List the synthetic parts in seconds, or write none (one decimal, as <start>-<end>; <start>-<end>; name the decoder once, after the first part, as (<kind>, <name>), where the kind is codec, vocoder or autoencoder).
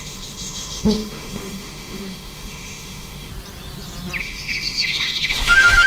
0.0-3.3 (autoencoder, DAC-VAE); 4.2-5.9